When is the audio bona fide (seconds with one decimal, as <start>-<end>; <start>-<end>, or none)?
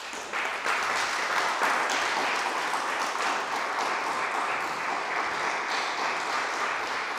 0.0-0.5; 1.3-2.2; 4.5-7.2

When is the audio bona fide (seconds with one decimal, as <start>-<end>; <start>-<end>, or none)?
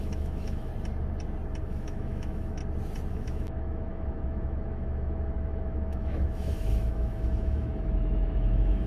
0.7-1.6; 2.6-3.1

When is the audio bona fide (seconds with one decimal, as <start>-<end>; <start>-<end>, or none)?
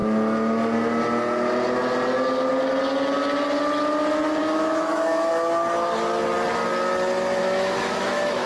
0.0-4.4; 5.3-7.4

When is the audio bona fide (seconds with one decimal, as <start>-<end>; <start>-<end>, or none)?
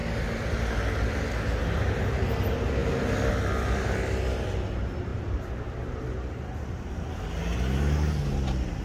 0.0-5.1; 6.9-8.8